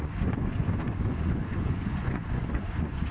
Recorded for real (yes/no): no